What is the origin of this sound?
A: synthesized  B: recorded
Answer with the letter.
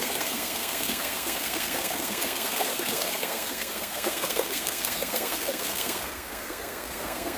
A